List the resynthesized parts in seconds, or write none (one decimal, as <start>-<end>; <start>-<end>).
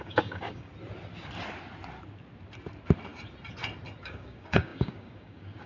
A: 0.0-0.7; 4.0-5.7